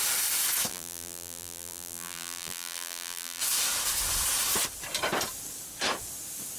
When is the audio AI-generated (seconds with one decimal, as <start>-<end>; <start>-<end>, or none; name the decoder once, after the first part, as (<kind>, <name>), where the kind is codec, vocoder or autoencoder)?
0.7-3.4 (vocoder, BigVGAN v2)